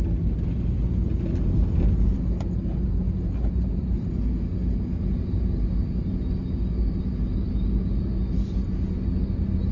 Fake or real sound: real